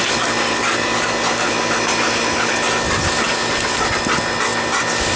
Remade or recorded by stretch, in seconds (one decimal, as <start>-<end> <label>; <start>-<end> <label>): 0.0-5.2 recorded